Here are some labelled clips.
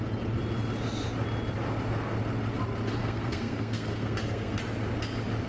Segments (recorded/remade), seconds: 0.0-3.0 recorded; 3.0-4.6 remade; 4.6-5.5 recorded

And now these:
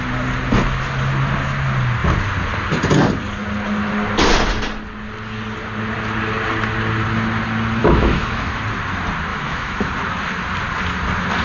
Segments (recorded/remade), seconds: 0.0-7.8 recorded; 7.8-8.6 remade; 8.6-9.3 recorded; 9.3-9.9 remade; 9.9-11.4 recorded

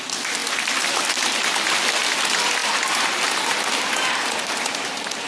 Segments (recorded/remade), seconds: 0.0-5.3 recorded

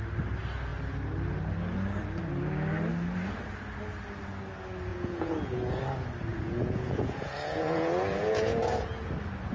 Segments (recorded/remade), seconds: 0.0-4.9 recorded; 4.9-5.8 remade; 5.8-6.3 recorded; 6.3-9.1 remade; 9.1-9.5 recorded

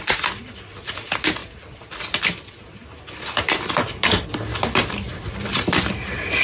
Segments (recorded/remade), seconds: 0.0-1.4 recorded; 1.4-2.2 remade; 2.2-5.1 recorded; 5.1-5.8 remade; 5.8-6.4 recorded

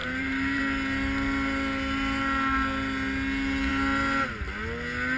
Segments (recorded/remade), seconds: 0.0-0.6 remade; 0.6-5.2 recorded

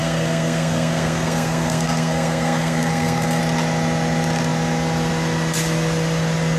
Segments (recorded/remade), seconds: 0.0-3.4 remade; 3.4-6.6 recorded